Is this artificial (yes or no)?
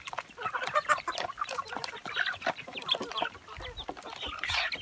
no